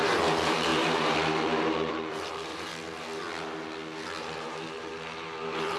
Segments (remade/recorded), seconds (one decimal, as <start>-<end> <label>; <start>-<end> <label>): 0.0-2.7 remade; 2.7-4.2 recorded; 4.2-5.8 remade